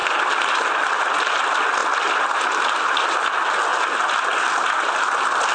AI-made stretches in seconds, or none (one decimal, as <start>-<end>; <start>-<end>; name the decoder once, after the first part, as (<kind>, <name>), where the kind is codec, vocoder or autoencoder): 0.0-0.6 (vocoder, BigVGAN v2); 3.7-5.0